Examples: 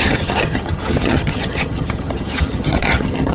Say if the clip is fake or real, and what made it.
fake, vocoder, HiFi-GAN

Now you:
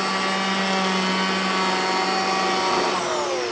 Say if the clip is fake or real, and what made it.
real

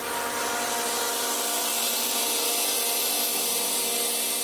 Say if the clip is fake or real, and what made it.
real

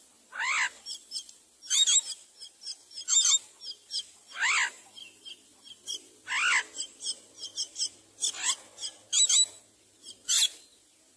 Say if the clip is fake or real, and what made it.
real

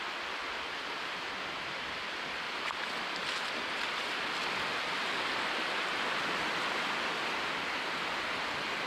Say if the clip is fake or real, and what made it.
real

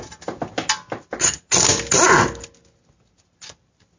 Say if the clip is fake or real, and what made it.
real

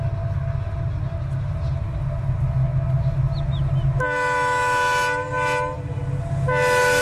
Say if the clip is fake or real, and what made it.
real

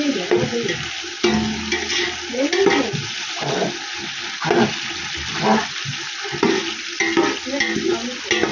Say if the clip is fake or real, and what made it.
real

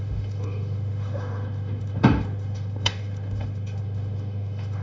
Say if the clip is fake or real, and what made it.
fake, autoencoder, DAC-VAE